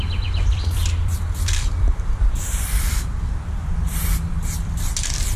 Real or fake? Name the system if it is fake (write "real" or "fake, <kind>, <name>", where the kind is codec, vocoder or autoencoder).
fake, vocoder, BigVGAN v2